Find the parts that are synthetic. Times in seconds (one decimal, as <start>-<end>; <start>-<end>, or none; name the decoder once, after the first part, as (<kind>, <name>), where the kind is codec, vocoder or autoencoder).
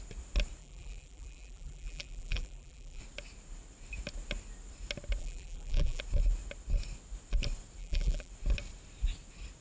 0.6-3.0 (vocoder, BigVGAN v2); 5.2-6.0; 7.8-8.3